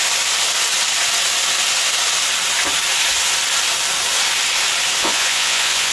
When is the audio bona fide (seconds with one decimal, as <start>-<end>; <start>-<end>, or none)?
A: 0.0-5.0